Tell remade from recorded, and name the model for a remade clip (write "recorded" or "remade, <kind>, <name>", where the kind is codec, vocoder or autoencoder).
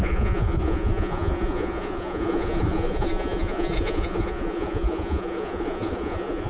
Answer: remade, vocoder, Vocos